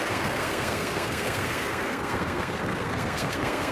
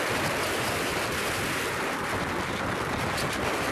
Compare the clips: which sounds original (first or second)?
second